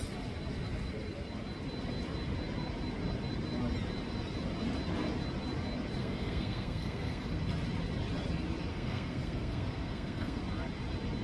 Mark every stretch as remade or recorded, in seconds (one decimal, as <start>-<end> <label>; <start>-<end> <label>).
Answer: 0.0-6.0 recorded; 6.0-7.4 remade; 7.4-8.7 recorded; 8.7-10.4 remade; 10.4-11.2 recorded